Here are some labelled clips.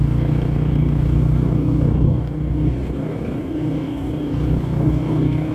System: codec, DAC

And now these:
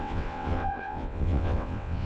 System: vocoder, WaveNeXt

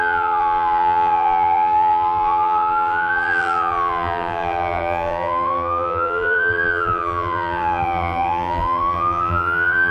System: vocoder, BigVGAN v2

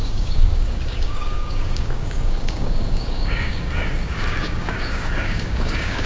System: codec, DAC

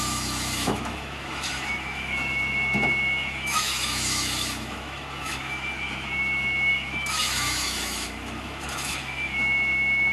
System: autoencoder, DAC-VAE